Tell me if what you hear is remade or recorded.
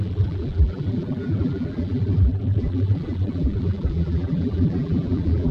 remade